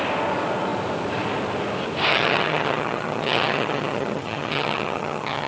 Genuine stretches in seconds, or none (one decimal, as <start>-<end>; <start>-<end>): 0.0-2.1